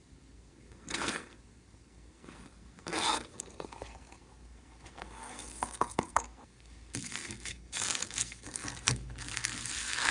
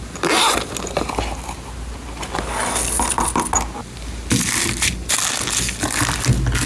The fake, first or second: first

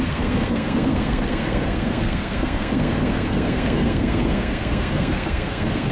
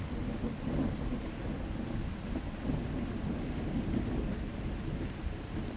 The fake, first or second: first